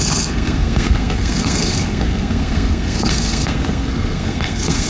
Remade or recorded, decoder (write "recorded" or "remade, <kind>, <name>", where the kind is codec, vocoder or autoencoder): remade, codec, SNAC